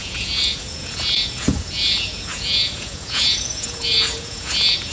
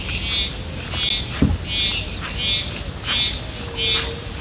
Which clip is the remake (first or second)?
first